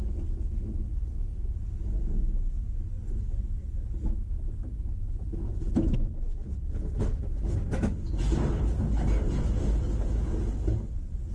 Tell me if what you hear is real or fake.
real